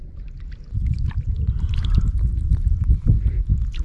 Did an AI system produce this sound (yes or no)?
no